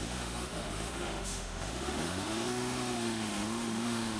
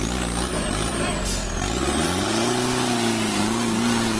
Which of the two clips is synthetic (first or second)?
first